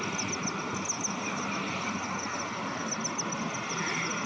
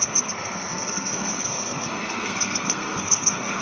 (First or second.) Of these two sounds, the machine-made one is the second